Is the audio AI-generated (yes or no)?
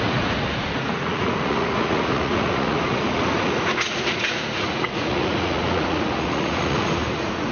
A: yes